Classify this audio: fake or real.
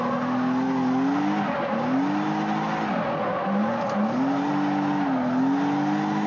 real